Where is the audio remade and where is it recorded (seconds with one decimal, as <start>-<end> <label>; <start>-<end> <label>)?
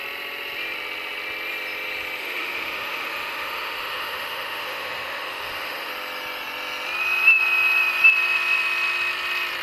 0.0-2.2 recorded; 2.2-5.9 remade; 5.9-9.6 recorded